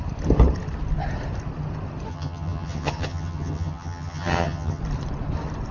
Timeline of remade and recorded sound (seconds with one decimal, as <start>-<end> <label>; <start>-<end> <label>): 0.0-2.1 recorded; 2.1-4.8 remade; 4.8-5.7 recorded